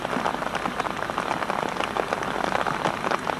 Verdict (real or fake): real